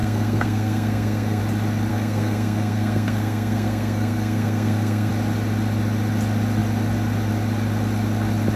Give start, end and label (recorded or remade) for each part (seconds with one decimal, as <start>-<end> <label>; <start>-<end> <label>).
0.0-1.4 remade; 1.4-1.9 recorded; 1.9-5.1 remade; 5.1-8.6 recorded